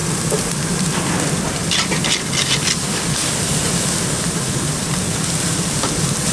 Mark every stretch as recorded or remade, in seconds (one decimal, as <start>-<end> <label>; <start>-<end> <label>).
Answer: 0.0-0.5 recorded; 0.5-6.3 remade